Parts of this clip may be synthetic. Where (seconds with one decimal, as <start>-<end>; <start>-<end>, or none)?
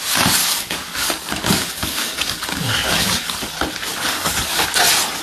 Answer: 0.4-3.5; 3.9-4.7